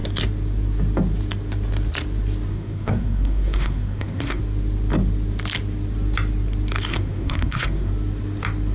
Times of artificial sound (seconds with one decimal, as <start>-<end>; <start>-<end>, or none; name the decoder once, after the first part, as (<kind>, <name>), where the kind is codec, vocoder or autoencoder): 2.5-4.4 (codec, SNAC); 6.9-7.9